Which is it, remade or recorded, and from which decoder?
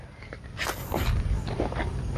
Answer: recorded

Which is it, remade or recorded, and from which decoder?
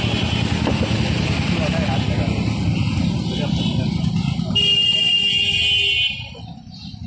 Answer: recorded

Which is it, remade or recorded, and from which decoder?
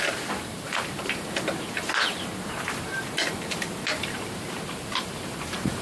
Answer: remade, vocoder, BigVGAN v2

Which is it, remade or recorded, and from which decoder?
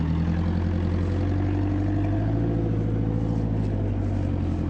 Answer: recorded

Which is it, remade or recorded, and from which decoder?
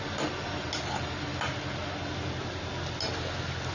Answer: recorded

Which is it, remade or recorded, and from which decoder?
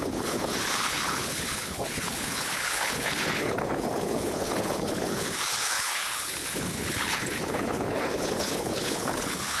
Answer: remade, codec, HILCodec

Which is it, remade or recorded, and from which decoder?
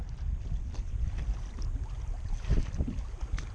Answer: recorded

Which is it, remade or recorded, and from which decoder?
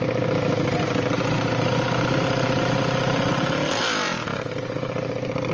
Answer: recorded